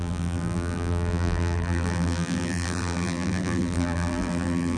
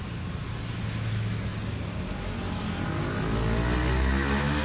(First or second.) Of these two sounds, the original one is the second